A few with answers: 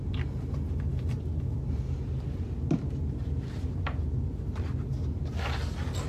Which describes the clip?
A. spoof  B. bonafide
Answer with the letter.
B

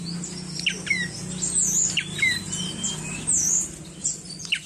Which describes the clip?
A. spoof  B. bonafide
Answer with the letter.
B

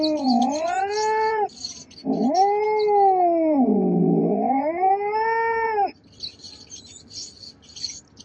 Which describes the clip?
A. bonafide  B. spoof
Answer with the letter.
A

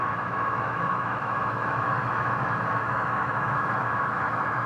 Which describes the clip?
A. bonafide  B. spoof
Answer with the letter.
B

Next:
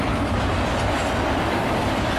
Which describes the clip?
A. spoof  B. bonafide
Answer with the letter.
B